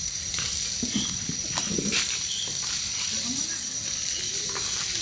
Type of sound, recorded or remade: recorded